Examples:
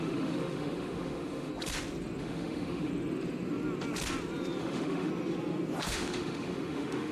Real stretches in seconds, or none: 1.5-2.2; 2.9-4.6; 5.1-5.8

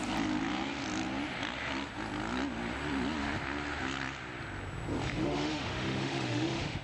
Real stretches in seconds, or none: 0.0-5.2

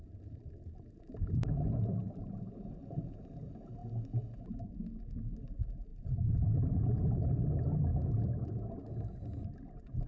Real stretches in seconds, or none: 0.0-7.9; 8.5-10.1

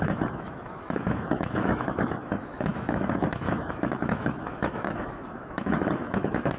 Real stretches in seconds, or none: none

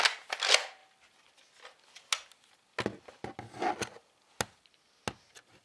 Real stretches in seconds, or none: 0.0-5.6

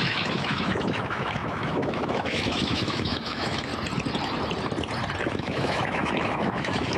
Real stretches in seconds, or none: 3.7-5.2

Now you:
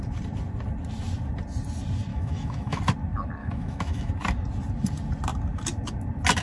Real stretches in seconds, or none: 0.0-2.1; 2.8-3.4; 4.1-6.4

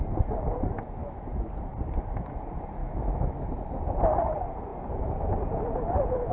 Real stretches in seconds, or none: 0.0-1.0; 1.5-2.8; 3.5-6.3